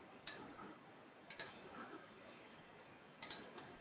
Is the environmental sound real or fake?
fake